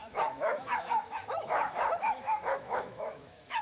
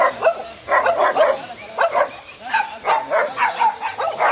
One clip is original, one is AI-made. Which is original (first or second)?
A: second